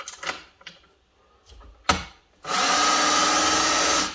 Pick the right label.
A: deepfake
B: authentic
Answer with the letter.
B